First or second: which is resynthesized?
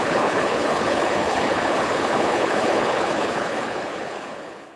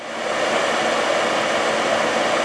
first